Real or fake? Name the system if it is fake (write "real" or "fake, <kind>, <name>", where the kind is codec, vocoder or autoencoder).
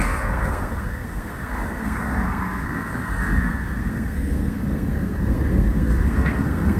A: fake, codec, SNAC